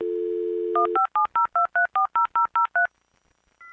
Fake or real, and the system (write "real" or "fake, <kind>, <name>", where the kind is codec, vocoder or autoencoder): real